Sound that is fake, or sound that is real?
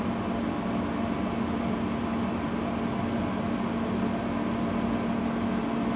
real